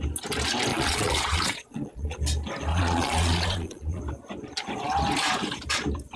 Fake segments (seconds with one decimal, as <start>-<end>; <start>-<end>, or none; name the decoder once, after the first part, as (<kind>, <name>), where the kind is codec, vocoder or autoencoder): 0.7-2.2 (vocoder, Vocos); 2.7-4.0